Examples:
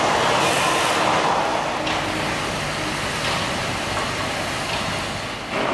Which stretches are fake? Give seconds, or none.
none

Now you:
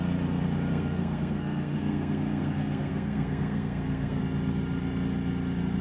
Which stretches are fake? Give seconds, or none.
0.7-4.2 (codec, SNAC)

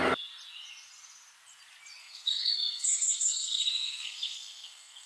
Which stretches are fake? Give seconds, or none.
2.0-5.1 (codec, SNAC)

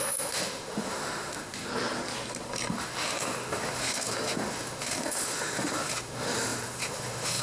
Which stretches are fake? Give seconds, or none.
0.0-1.7 (autoencoder, DAC-VAE); 2.7-7.4

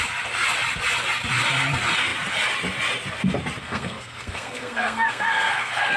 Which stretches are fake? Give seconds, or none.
3.6-6.0 (codec, SNAC)